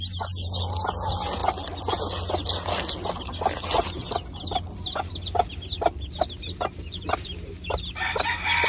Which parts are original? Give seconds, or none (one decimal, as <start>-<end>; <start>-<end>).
0.0-8.7